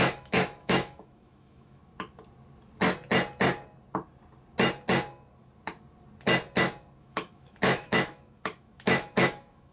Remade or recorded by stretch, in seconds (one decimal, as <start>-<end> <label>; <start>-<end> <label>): 0.0-1.8 remade; 1.8-7.0 recorded; 7.0-9.7 remade